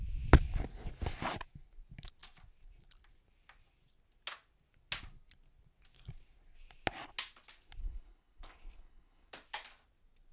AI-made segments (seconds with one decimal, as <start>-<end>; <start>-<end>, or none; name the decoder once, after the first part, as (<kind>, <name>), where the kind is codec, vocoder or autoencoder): 7.8-9.3 (codec, HILCodec)